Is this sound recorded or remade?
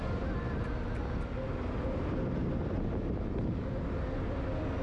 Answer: recorded